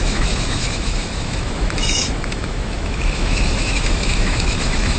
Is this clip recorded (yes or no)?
no